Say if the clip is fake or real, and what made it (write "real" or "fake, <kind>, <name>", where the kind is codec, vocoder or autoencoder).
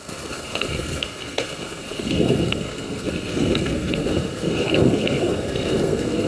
fake, codec, SNAC